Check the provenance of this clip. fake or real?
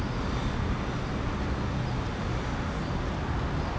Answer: real